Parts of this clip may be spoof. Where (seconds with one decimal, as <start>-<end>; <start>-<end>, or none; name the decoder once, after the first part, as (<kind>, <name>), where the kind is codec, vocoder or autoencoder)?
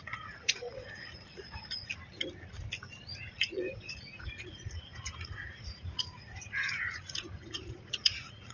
0.0-1.9 (vocoder, Vocos); 3.3-8.5